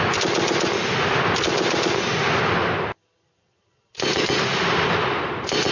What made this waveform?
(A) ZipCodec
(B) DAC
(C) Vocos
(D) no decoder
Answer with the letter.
D